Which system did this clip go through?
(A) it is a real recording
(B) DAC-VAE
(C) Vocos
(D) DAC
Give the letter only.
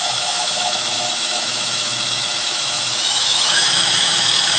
B